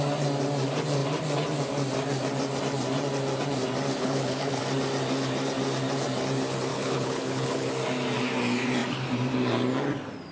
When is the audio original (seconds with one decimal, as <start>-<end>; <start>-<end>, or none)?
0.0-4.0; 4.6-6.7; 7.7-10.3